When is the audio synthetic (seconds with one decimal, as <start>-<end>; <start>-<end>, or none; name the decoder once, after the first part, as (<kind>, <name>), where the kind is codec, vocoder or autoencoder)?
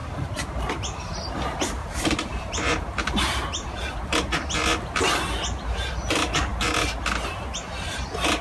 0.0-1.3 (vocoder, BigVGAN v2); 1.8-4.5